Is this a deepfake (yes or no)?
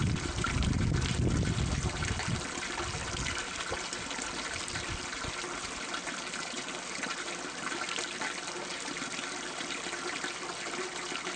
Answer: no